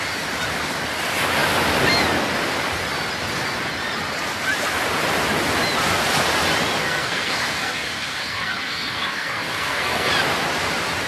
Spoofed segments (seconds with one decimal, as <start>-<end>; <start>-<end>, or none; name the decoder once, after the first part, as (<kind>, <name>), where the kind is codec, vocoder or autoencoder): 6.8-10.1 (codec, SNAC)